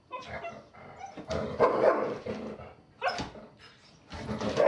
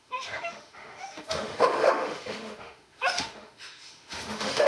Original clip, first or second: first